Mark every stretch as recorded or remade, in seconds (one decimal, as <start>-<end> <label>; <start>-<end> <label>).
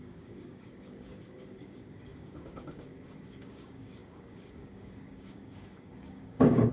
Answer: 0.0-6.7 remade